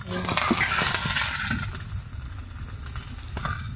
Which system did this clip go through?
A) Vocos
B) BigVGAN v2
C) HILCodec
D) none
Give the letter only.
D